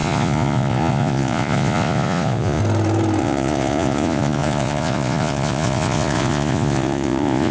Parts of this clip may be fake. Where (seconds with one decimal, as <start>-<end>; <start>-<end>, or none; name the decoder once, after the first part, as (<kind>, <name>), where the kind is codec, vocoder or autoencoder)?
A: 0.0-2.6 (vocoder, Vocos); 3.2-7.5